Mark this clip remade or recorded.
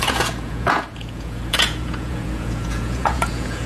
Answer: remade